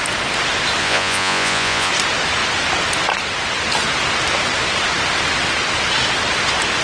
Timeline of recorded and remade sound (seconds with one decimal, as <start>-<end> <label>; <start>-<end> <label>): 0.0-0.8 recorded; 0.8-1.9 remade; 1.9-6.8 recorded